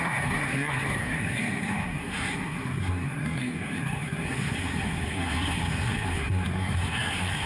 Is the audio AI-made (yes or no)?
yes